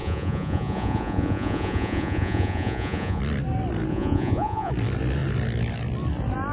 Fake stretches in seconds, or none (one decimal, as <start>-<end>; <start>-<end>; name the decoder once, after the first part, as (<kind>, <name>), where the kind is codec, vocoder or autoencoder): 0.0-3.2 (vocoder, Vocos); 3.9-4.7